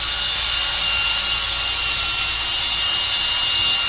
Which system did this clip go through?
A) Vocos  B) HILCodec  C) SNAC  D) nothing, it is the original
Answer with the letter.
D